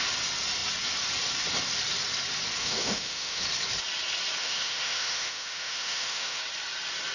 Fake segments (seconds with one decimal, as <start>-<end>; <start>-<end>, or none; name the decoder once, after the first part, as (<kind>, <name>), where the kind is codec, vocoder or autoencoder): 2.6-3.4 (autoencoder, DAC-VAE); 4.4-6.4

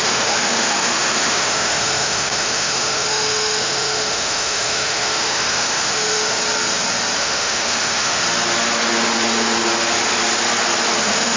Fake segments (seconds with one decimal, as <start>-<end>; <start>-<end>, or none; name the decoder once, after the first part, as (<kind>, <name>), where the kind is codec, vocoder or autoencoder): 0.0-6.4 (autoencoder, DAC-VAE); 7.2-8.2; 11.0-11.4

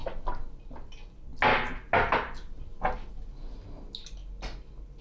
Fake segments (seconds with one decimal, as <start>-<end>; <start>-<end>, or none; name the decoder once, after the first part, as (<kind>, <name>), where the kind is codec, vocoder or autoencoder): none

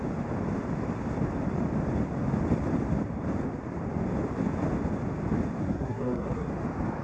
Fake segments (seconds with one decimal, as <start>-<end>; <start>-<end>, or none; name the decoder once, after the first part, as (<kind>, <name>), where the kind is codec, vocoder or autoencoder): 5.6-6.5 (codec, SNAC)

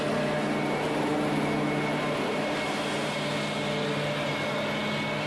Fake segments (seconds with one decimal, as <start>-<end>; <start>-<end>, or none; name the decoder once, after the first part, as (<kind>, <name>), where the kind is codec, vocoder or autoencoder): none

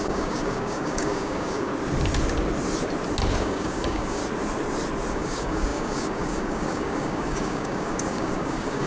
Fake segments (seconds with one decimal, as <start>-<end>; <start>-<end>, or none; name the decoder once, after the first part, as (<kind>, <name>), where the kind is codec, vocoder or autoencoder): 0.0-1.7 (codec, DAC); 3.4-4.2; 5.1-8.9

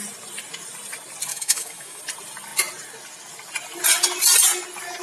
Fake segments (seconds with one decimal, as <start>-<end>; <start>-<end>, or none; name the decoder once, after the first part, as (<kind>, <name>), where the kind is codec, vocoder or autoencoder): 1.3-2.0 (autoencoder, DAC-VAE)

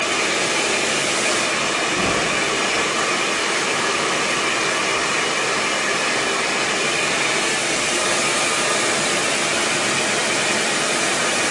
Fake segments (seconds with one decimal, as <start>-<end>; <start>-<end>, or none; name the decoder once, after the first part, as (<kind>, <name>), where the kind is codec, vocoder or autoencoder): 3.4-4.2 (autoencoder, DAC-VAE)